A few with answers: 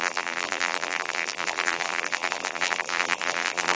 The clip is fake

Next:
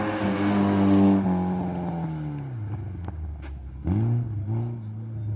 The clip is real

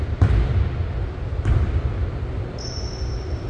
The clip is real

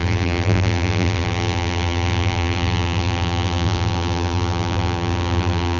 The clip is fake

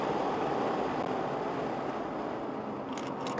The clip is real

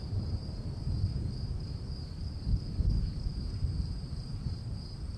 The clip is fake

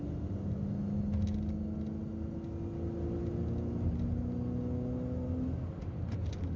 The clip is real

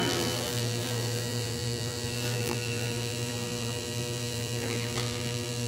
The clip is fake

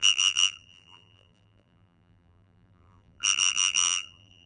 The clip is fake